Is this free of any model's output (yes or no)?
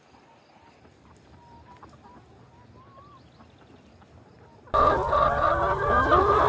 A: yes